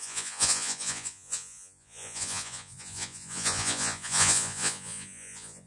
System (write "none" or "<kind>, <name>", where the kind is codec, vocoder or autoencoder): vocoder, Vocos